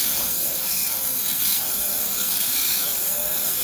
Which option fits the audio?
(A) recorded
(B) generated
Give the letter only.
B